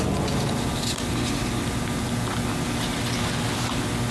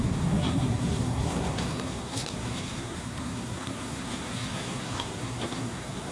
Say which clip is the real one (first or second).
first